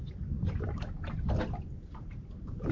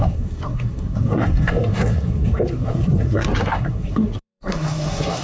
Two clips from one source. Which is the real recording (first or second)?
first